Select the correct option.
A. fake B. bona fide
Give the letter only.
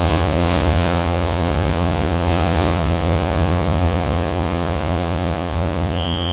A